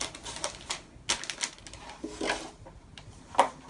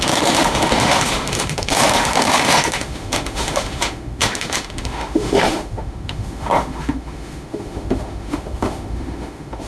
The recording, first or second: first